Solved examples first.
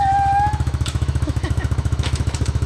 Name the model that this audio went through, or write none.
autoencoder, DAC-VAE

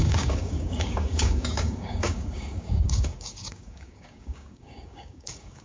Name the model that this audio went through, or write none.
codec, DAC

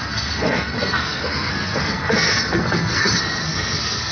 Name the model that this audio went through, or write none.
codec, SNAC